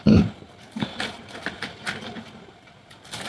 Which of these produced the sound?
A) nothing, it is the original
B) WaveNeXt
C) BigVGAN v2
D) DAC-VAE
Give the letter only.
A